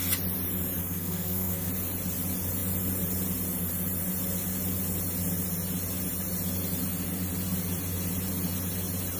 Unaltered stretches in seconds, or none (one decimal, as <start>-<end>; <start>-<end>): 0.0-0.8; 1.7-9.2